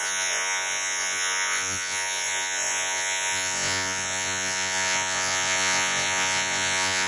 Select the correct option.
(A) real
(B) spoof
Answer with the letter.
B